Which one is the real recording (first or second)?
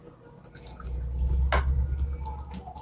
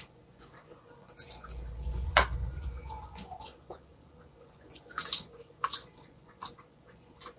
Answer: first